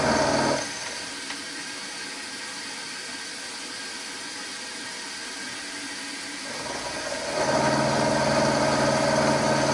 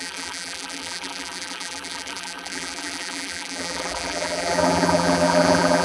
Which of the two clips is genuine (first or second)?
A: first